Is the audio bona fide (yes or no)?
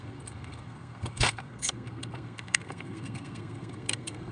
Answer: no